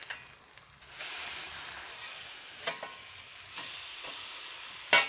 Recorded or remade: recorded